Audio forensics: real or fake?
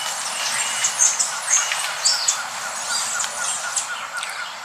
real